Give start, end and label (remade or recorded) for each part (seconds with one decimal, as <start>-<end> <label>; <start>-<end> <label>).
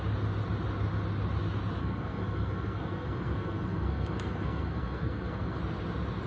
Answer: 0.0-1.8 recorded; 1.8-5.6 remade; 5.6-6.3 recorded